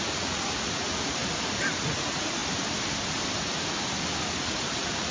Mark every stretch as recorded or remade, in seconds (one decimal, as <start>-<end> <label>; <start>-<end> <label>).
0.0-1.2 remade; 1.2-1.9 recorded; 1.9-2.4 remade; 2.4-4.4 recorded; 4.4-5.1 remade